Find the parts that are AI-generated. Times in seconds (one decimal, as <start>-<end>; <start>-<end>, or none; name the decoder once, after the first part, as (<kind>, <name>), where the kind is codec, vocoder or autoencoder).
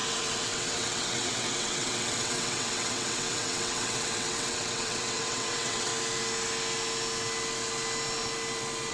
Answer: 0.0-5.9 (vocoder, WaveNeXt)